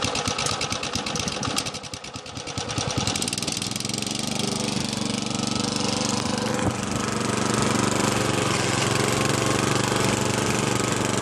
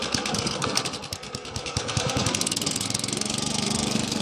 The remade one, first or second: second